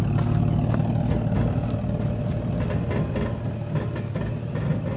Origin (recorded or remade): recorded